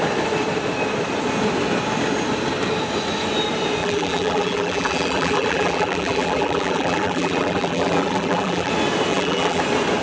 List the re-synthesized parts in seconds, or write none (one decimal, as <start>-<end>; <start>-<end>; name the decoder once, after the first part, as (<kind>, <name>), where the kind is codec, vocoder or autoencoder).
3.8-8.7 (vocoder, BigVGAN v2); 9.1-9.6